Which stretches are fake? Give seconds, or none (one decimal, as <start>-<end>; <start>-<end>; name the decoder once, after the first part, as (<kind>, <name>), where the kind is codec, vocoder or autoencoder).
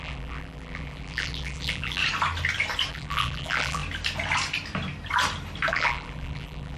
0.0-2.0 (vocoder, BigVGAN v2); 2.9-3.8; 5.7-6.8